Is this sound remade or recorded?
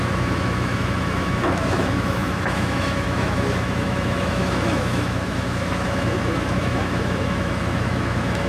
remade